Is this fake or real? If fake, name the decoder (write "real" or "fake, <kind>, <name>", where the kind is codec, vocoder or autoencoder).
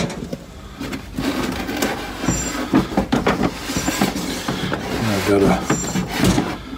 real